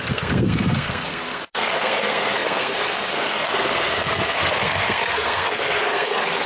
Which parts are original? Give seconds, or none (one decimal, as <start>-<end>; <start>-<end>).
none